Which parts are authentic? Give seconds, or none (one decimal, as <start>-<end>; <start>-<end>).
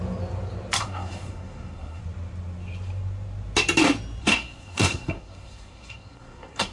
0.0-0.8; 2.0-4.2